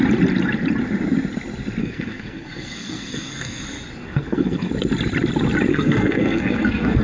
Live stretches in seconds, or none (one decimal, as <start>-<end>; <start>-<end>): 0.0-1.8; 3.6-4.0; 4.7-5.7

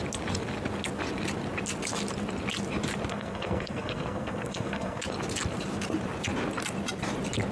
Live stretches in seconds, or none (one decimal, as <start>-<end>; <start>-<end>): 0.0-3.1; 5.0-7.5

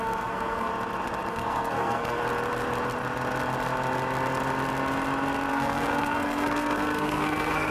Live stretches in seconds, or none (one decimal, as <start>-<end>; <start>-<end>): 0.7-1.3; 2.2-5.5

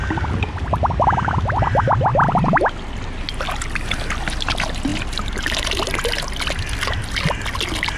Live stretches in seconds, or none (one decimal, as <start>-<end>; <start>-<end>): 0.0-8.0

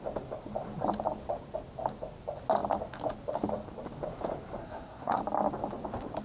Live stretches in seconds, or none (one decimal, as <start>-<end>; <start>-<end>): 0.0-4.6; 5.2-6.2

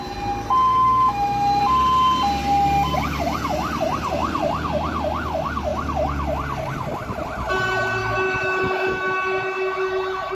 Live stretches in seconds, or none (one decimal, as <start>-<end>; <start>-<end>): 0.0-0.7; 1.6-8.0